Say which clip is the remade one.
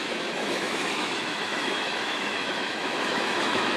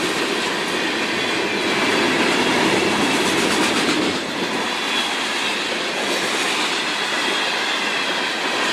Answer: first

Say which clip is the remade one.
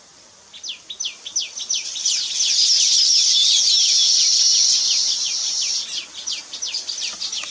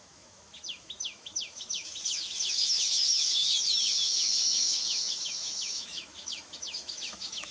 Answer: second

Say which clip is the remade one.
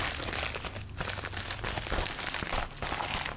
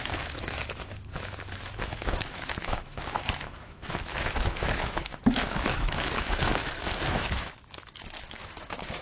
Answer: second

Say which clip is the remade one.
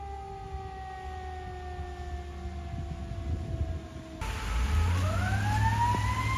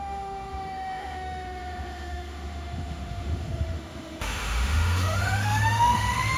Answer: second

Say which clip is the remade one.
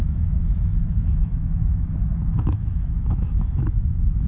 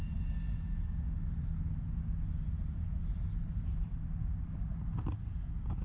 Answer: first